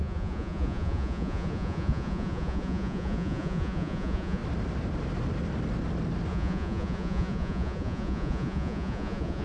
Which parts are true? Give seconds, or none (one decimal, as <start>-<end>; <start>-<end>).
4.4-6.3